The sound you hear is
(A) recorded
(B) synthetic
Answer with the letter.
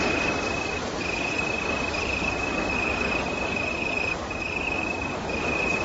B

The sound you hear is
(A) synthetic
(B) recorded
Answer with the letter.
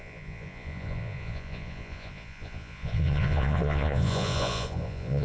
A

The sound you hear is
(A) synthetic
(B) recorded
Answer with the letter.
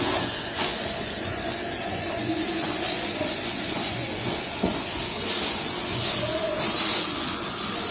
A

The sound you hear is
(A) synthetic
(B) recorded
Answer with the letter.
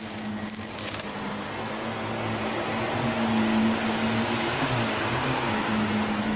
B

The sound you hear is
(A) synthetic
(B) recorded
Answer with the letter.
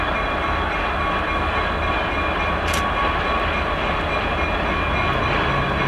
B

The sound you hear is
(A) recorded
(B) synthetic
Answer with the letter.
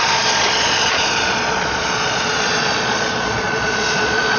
B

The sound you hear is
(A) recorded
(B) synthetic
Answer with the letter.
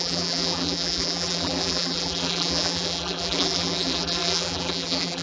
B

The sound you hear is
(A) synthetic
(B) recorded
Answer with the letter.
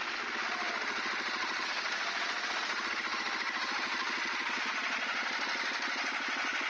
B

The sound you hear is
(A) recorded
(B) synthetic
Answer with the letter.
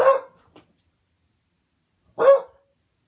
A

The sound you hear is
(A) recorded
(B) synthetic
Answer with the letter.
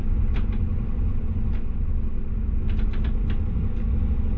A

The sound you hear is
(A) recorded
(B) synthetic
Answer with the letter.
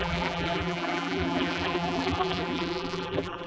B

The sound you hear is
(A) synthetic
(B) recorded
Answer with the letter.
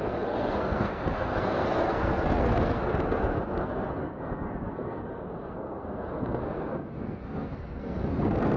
A